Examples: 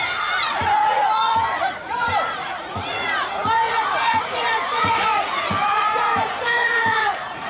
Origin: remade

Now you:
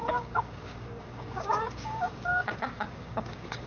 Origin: remade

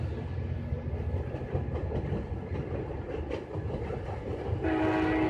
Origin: recorded